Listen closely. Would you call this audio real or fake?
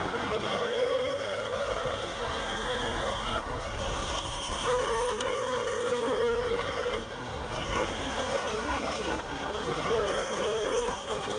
fake